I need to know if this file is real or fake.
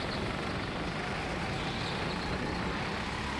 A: real